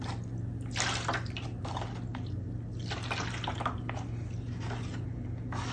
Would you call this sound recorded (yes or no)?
yes